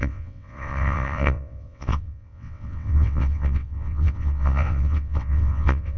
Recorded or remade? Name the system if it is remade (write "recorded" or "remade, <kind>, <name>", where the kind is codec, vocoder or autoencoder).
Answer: remade, vocoder, WaveNeXt